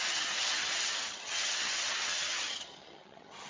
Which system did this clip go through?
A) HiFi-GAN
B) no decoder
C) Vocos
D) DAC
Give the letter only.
A